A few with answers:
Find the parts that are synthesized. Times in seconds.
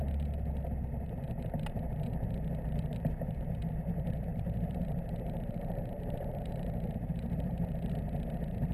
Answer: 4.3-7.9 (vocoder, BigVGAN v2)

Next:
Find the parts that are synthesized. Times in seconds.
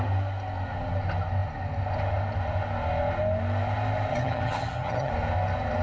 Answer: 4.1-5.1 (vocoder, HiFi-GAN)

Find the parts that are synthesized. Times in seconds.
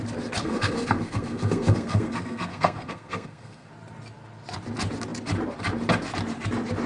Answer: 0.4-3.7 (codec, SNAC)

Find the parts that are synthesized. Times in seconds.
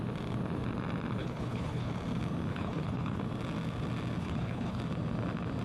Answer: 1.2-1.9 (codec, HILCodec); 2.5-3.2; 4.2-4.8